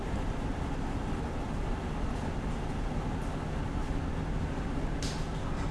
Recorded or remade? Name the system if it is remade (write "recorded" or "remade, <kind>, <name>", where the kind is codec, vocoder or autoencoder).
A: recorded